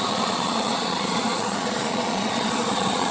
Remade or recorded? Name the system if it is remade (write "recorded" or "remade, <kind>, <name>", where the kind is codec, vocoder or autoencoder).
remade, vocoder, Vocos